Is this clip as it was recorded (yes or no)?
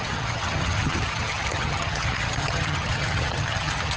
no